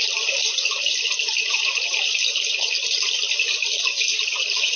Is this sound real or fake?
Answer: real